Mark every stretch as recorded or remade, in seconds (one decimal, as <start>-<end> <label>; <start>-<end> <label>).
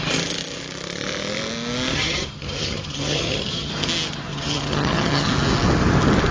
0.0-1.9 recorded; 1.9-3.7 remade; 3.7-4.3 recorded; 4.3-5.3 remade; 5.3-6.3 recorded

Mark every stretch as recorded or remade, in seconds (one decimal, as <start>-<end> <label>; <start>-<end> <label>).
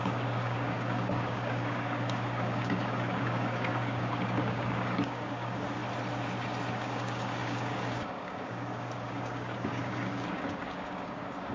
0.0-5.8 remade; 5.8-6.7 recorded; 6.7-11.5 remade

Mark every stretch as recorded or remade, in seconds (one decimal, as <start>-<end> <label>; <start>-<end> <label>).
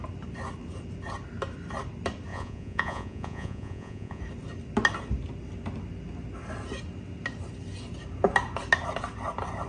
0.0-2.3 recorded; 2.3-4.2 remade; 4.2-9.7 recorded